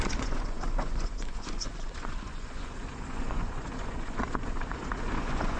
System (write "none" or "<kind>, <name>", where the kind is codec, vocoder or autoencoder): vocoder, Vocos